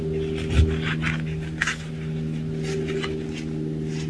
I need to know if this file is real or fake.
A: real